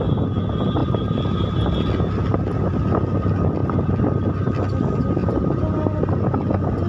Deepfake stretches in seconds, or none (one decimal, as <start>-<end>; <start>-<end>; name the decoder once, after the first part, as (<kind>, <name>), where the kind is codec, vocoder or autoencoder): 0.8-1.7 (vocoder, BigVGAN v2); 5.2-5.7

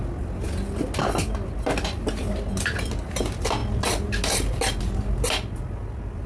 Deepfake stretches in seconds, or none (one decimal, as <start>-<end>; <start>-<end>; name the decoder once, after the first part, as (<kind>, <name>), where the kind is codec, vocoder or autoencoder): none

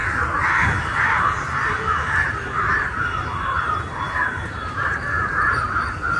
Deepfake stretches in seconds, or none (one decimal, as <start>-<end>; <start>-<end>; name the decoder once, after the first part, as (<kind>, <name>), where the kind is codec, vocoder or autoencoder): 0.0-6.2 (vocoder, BigVGAN v2)